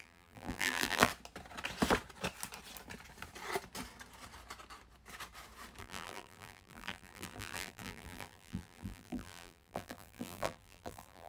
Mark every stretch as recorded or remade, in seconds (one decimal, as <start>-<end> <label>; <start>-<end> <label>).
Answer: 0.0-1.1 remade; 1.1-5.8 recorded; 5.8-11.3 remade